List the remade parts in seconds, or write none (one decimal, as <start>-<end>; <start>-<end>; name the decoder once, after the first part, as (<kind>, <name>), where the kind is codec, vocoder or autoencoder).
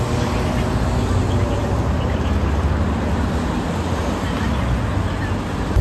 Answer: none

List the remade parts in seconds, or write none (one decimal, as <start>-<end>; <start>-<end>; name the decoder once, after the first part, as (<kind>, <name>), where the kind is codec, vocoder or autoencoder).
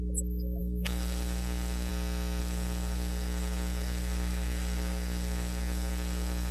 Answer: 0.6-1.9 (codec, SNAC); 2.4-6.5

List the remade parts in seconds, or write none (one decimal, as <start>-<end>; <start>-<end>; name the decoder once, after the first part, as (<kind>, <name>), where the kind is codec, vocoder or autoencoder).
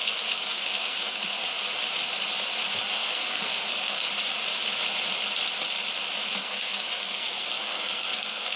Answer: 0.0-1.4 (codec, SNAC); 2.9-4.1; 6.4-8.6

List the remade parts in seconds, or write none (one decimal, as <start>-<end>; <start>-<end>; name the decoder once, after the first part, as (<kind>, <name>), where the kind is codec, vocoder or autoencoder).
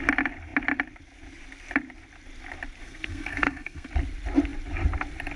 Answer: 2.8-3.9 (codec, SNAC)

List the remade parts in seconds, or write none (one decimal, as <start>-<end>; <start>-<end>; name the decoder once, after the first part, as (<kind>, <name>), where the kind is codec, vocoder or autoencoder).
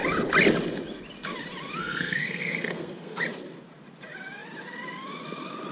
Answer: 1.8-3.2 (codec, SNAC)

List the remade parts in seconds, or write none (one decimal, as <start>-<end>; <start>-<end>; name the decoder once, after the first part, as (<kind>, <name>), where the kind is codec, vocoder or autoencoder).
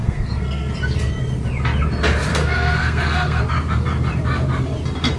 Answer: 0.0-0.7 (codec, SNAC); 2.3-3.4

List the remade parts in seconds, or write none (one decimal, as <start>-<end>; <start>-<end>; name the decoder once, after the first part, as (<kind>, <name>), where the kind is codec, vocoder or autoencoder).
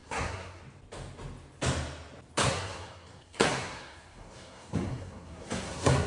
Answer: 0.0-0.6 (codec, SNAC); 2.4-6.1